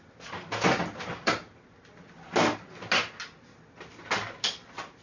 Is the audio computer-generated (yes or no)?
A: no